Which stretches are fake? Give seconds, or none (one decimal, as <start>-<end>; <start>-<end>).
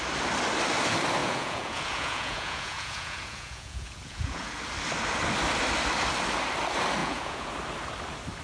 1.2-4.6; 7.0-7.5